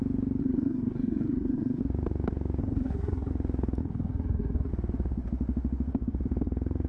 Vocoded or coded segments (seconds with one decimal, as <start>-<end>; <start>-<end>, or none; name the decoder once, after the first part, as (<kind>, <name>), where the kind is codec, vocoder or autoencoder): 0.4-1.8 (codec, SNAC); 2.6-3.3; 3.8-4.7